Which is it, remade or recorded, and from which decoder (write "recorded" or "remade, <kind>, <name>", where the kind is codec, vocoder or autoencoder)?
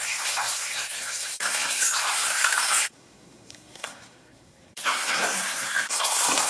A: remade, codec, SNAC